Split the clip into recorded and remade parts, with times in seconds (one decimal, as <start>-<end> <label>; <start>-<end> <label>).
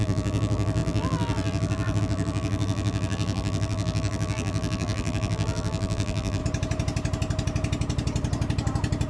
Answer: 0.0-6.4 remade; 6.4-9.1 recorded